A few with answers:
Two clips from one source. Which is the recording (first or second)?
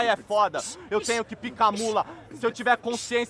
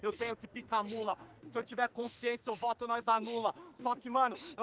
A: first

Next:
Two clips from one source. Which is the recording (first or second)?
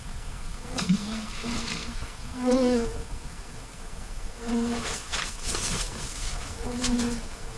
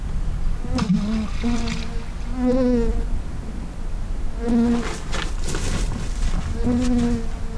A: second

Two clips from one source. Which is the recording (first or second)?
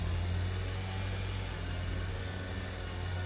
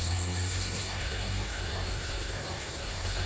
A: first